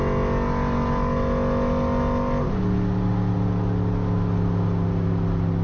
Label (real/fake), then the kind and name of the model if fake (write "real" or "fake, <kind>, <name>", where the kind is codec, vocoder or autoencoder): real